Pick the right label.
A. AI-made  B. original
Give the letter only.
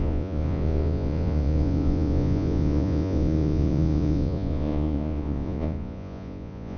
A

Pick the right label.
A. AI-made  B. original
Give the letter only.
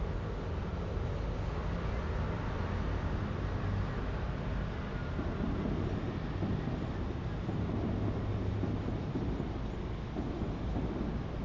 B